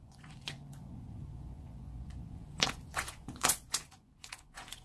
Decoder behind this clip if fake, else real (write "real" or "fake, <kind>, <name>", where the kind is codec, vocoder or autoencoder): fake, vocoder, Vocos